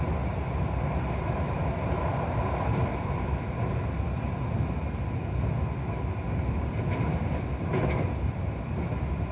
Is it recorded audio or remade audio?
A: recorded